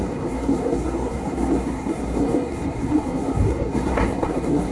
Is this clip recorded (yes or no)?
no